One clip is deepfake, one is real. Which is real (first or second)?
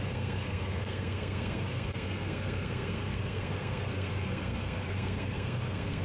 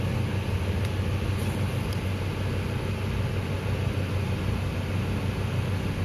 second